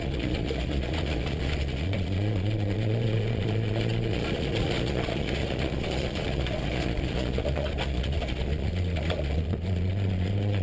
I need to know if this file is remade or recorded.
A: remade